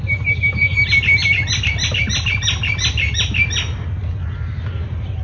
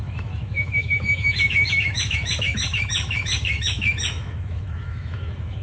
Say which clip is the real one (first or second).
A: first